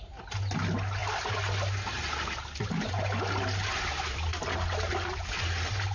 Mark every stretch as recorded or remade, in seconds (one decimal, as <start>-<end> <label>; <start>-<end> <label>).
0.0-5.9 recorded